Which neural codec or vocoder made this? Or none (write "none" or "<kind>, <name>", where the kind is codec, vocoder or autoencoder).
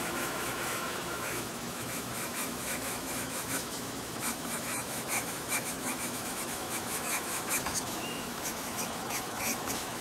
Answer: autoencoder, DAC-VAE